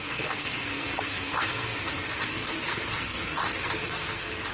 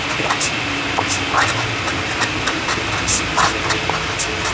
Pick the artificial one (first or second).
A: first